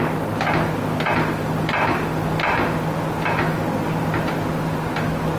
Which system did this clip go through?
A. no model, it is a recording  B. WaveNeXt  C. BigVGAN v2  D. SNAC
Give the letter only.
A